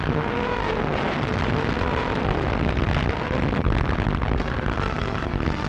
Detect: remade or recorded recorded